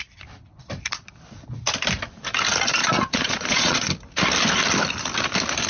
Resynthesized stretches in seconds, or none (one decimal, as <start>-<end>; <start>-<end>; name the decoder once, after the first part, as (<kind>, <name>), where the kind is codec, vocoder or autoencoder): 2.8-3.9 (vocoder, Vocos)